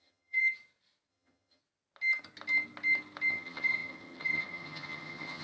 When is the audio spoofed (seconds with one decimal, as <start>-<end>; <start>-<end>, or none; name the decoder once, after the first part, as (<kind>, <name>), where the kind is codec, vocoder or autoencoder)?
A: 0.0-0.4 (vocoder, HiFi-GAN); 1.1-1.6; 3.3-5.4

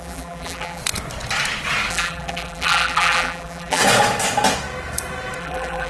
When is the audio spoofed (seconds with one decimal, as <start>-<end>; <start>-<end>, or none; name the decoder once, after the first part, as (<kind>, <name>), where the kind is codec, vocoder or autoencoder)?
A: 0.0-0.8 (vocoder, BigVGAN v2); 1.9-3.8; 5.4-5.9